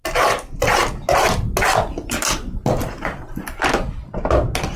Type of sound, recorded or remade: recorded